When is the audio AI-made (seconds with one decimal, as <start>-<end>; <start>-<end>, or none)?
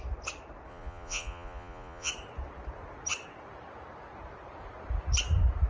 0.7-2.1